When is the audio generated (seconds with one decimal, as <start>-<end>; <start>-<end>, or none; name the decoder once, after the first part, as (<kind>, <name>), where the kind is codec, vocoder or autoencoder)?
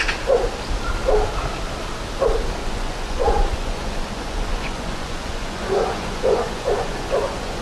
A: 2.6-7.6 (vocoder, Vocos)